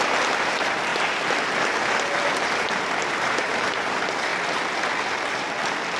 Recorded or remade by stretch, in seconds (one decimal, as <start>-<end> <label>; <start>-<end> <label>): 0.0-0.9 remade; 0.9-3.0 recorded; 3.0-4.3 remade; 4.3-6.0 recorded